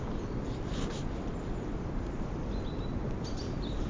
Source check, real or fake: real